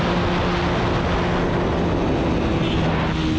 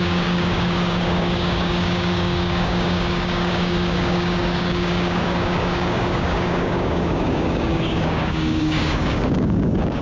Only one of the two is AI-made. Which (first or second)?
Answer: second